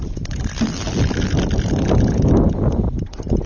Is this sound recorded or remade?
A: recorded